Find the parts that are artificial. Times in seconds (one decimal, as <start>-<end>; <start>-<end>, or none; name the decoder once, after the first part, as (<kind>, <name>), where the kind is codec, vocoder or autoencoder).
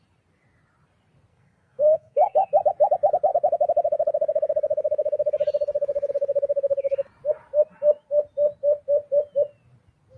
1.3-2.5 (codec, SNAC)